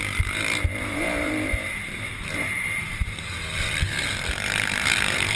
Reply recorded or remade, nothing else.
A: remade